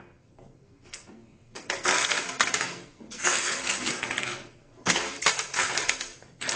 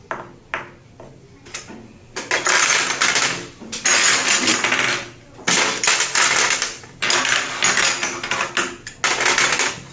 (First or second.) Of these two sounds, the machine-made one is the first